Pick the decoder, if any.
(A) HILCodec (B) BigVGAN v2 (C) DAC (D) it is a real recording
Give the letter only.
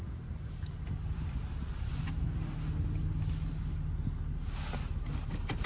D